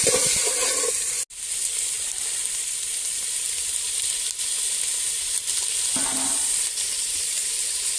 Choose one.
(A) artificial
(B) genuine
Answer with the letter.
B